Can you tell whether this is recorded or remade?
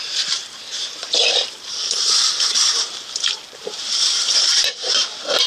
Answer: remade